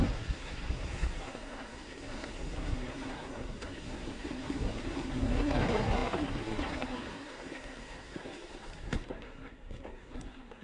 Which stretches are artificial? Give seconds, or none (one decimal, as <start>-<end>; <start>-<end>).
0.0-10.6